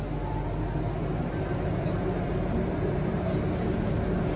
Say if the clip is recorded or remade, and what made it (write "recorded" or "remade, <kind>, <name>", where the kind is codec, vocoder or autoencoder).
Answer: recorded